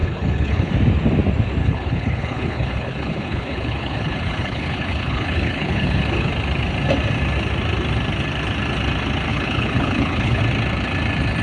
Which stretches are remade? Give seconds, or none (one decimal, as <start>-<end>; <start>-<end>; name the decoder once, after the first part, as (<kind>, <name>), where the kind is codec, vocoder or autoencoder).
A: 0.0-0.7 (codec, HILCodec); 1.6-6.3; 9.3-10.4